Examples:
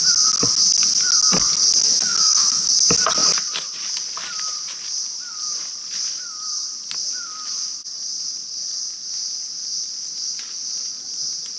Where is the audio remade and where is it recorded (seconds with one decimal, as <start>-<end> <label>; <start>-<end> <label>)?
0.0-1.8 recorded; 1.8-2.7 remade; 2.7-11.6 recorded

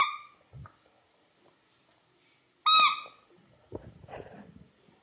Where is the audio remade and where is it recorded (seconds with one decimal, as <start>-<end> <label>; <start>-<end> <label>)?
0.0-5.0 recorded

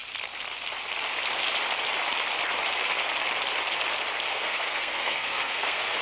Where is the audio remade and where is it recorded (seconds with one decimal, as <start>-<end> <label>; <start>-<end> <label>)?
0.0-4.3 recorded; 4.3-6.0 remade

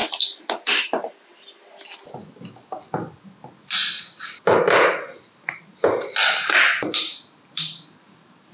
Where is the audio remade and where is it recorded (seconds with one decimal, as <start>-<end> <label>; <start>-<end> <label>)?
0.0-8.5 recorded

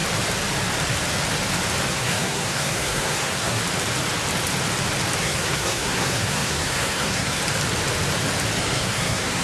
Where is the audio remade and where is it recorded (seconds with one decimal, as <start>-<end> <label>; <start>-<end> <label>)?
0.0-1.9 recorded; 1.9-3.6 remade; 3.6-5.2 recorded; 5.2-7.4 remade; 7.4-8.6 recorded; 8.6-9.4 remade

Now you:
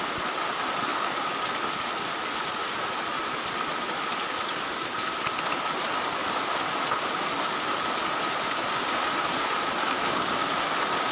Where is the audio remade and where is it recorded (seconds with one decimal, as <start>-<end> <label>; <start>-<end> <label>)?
0.0-11.1 recorded

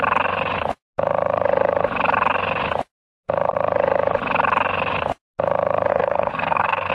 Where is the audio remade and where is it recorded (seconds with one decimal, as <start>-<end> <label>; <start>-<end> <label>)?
0.0-5.9 recorded; 5.9-6.9 remade